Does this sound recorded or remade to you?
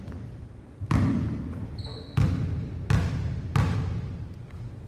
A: recorded